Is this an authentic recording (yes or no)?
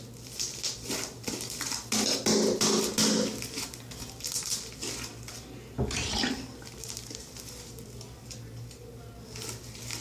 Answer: yes